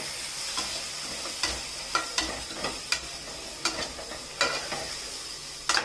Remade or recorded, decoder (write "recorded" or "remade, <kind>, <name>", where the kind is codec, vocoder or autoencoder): recorded